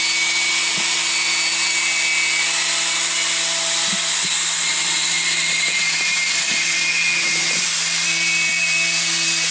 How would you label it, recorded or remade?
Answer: remade